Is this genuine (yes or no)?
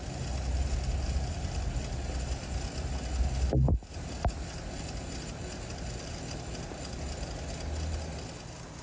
yes